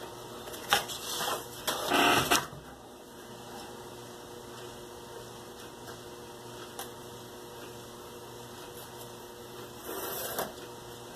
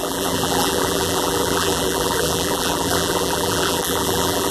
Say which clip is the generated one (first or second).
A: second